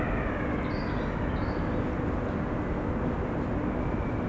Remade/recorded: recorded